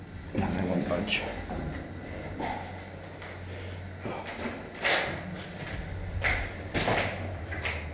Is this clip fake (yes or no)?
no